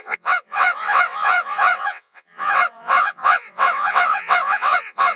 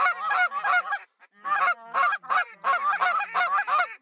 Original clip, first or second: second